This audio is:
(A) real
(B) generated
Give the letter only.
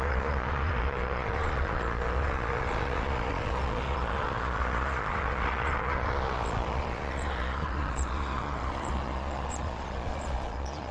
B